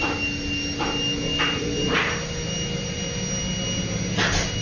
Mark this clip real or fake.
real